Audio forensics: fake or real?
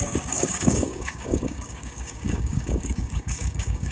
fake